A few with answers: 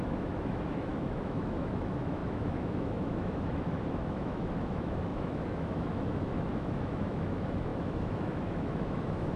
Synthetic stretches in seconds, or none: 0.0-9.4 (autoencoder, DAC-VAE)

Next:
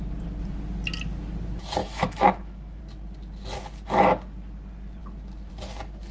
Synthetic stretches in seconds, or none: 1.8-2.8 (autoencoder, DAC-VAE)

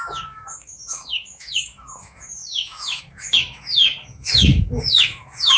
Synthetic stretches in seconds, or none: 0.0-5.6 (autoencoder, DAC-VAE)

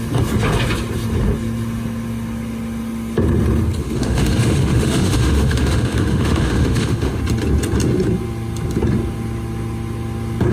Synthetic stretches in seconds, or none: 3.8-7.2 (autoencoder, DAC-VAE)

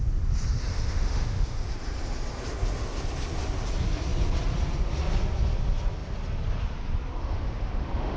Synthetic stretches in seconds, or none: 0.7-1.7 (autoencoder, DAC-VAE); 7.2-8.2